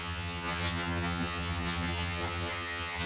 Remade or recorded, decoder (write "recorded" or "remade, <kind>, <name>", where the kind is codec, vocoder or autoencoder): remade, vocoder, HiFi-GAN